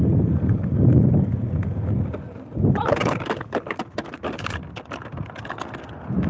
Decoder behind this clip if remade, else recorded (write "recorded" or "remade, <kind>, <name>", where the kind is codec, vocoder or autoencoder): recorded